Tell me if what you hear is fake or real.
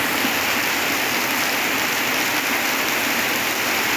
real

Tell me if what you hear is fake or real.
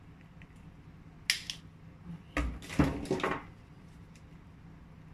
real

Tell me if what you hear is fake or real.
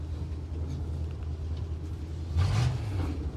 real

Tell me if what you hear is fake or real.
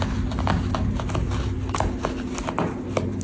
real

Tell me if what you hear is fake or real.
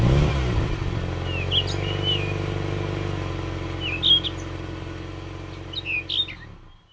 real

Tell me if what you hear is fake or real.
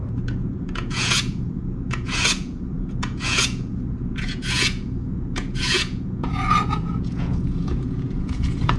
fake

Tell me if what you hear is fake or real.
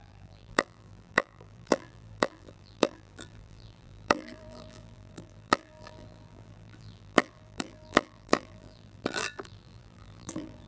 fake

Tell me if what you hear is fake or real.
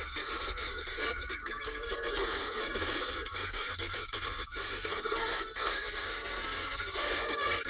fake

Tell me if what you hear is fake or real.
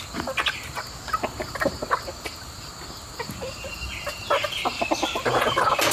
real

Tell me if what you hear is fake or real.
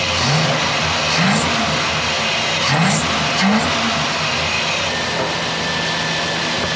real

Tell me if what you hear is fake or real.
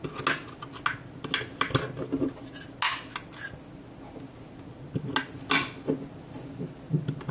real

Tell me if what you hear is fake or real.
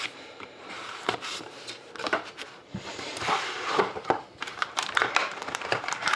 fake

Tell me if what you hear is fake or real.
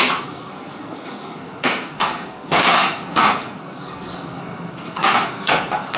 fake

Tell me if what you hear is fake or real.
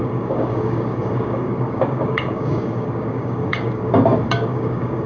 fake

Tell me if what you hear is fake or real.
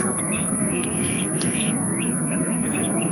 fake